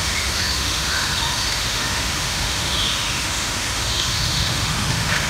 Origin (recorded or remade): remade